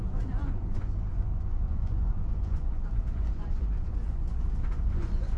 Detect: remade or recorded remade